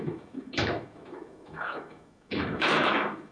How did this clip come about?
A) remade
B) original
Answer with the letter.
A